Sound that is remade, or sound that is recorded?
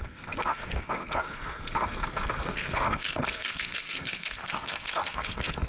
remade